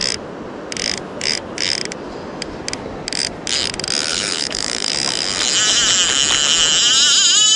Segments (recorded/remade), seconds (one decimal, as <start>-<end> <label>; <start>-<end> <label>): 0.0-4.1 recorded; 4.1-4.9 remade; 4.9-7.6 recorded